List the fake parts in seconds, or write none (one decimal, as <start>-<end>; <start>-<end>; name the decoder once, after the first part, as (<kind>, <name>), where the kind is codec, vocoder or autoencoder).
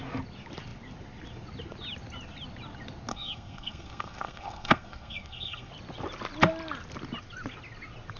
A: 3.1-5.7 (codec, SNAC)